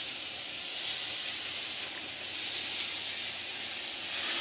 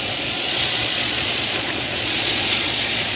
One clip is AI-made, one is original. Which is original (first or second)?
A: first